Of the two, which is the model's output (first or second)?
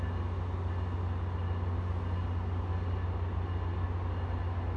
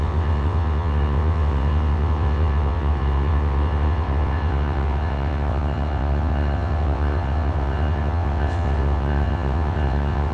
second